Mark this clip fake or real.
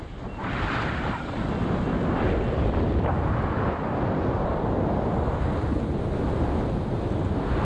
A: real